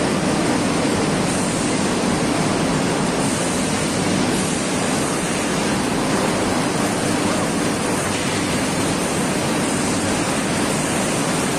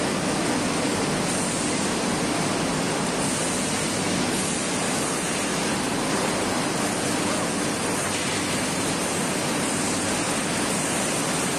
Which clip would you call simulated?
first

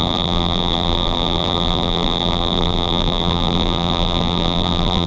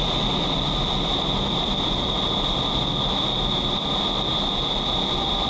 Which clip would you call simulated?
first